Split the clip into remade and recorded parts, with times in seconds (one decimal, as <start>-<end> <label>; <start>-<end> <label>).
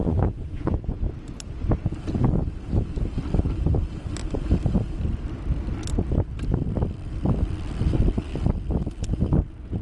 0.0-1.0 remade; 1.0-9.8 recorded